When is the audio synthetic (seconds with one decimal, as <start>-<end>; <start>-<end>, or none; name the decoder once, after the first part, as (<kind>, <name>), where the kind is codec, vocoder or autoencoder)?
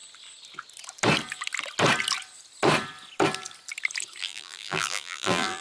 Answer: 4.2-5.6 (vocoder, BigVGAN v2)